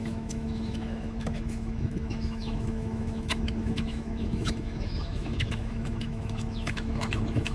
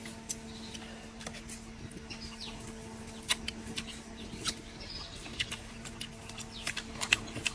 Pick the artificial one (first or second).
first